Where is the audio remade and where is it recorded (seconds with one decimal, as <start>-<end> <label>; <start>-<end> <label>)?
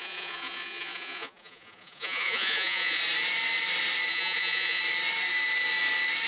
0.0-3.0 remade; 3.0-4.1 recorded; 4.1-4.8 remade; 4.8-6.3 recorded